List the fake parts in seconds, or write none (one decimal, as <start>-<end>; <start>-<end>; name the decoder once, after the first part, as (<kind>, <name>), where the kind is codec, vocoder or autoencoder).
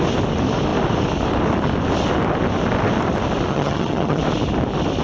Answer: 3.5-4.2 (vocoder, HiFi-GAN)